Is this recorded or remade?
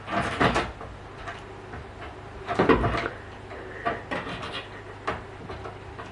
recorded